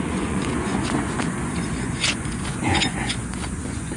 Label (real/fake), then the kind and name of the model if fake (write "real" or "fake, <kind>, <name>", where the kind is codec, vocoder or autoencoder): fake, vocoder, Vocos